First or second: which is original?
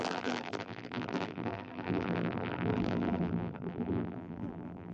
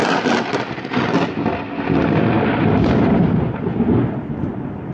second